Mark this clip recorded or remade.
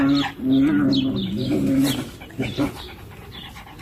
recorded